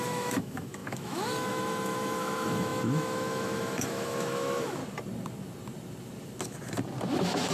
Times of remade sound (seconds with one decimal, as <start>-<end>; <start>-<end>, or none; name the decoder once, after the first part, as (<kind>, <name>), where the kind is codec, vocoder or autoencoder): 0.0-4.8 (autoencoder, DAC-VAE); 7.1-7.5